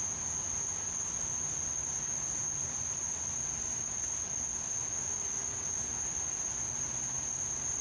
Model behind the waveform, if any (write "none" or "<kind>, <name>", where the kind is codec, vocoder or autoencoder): none